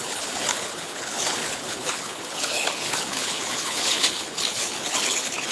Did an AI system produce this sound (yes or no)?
yes